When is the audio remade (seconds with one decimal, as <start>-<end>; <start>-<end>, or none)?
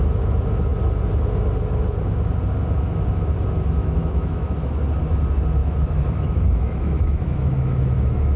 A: 3.8-4.8; 5.6-8.4